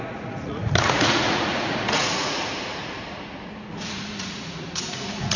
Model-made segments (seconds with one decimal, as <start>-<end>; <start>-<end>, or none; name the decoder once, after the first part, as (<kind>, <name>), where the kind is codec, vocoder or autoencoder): 0.0-5.4 (vocoder, Vocos)